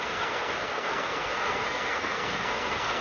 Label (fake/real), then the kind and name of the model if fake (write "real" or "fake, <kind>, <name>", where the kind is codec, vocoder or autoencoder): fake, codec, SNAC